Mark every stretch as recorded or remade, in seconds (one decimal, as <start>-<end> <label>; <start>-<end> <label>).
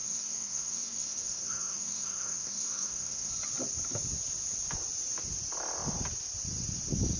0.0-3.3 remade; 3.3-7.2 recorded